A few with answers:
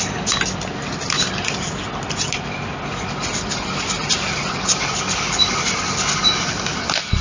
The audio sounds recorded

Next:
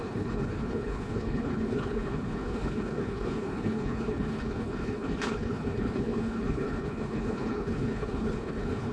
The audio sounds remade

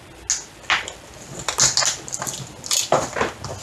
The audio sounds recorded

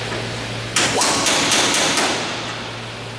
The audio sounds recorded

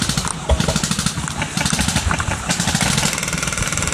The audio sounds remade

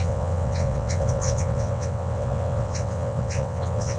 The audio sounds remade